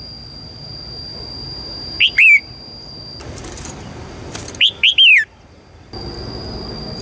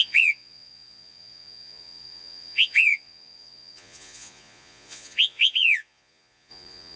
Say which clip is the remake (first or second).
second